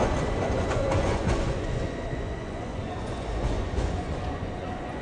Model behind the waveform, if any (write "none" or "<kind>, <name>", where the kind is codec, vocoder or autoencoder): vocoder, Vocos